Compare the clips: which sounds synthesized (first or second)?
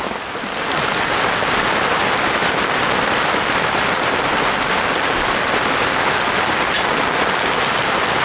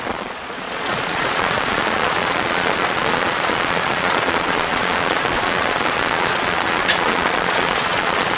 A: second